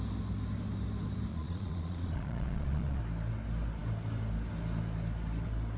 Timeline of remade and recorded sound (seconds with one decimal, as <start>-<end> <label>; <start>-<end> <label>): 0.0-1.3 recorded; 1.3-3.0 remade; 3.0-5.8 recorded